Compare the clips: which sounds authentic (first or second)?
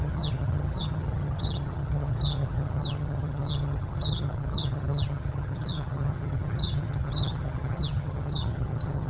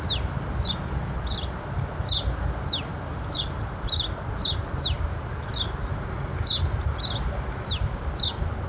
second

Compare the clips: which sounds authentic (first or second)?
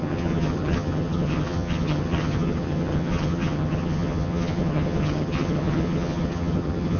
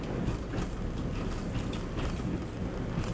second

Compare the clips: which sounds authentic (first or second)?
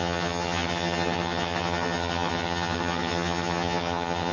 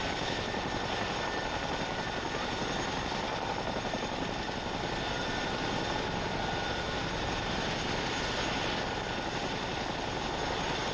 second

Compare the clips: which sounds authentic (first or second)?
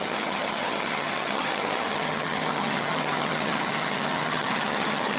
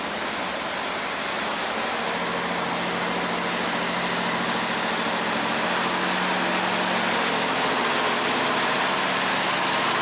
second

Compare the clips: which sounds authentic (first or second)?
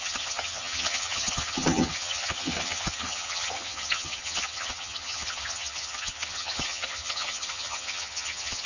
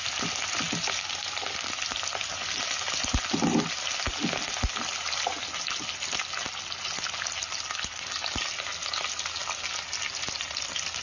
second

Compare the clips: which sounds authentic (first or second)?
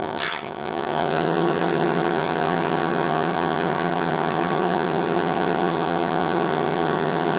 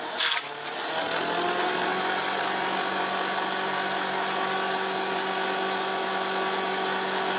second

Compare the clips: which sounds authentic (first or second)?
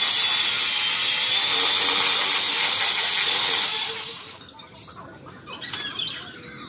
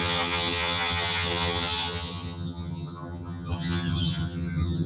first